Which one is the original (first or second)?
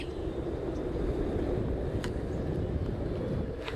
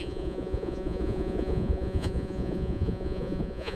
first